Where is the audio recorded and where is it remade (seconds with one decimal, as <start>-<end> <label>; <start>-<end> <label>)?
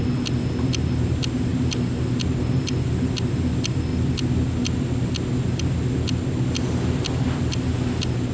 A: 0.0-8.3 recorded